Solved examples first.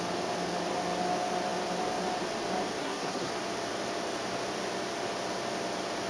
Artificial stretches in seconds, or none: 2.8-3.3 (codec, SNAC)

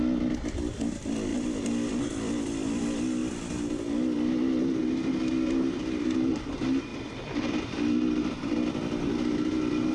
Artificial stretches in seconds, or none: 1.3-2.8 (vocoder, BigVGAN v2); 6.9-8.5

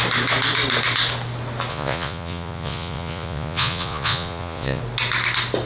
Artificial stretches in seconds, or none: 1.7-4.8 (vocoder, Vocos)

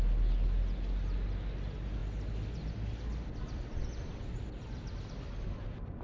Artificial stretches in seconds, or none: none

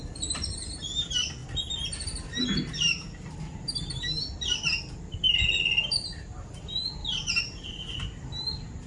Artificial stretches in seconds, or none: none

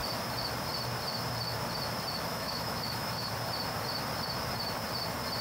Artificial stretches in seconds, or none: 2.3-3.3 (autoencoder, DAC-VAE)